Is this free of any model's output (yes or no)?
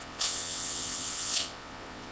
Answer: no